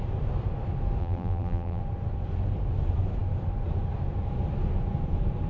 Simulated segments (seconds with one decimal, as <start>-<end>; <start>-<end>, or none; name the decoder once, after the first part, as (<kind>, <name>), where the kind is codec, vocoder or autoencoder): 1.0-1.8 (vocoder, BigVGAN v2)